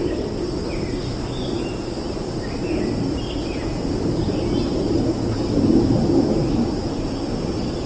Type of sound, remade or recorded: recorded